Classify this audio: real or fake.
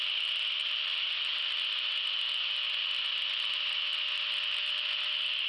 real